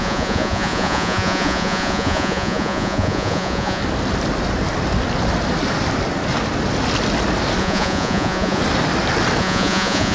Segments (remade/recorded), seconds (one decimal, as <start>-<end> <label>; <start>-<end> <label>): 0.0-3.8 remade; 3.8-7.6 recorded; 7.6-8.6 remade; 8.6-9.4 recorded; 9.4-10.1 remade